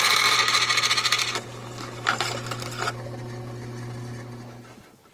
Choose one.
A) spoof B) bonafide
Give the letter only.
B